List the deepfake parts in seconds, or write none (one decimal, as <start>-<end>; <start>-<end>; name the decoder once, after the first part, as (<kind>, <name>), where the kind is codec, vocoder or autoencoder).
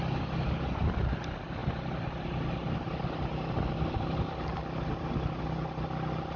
none